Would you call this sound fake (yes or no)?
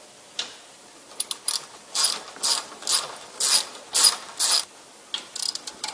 no